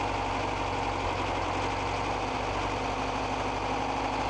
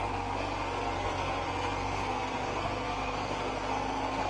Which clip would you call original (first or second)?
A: first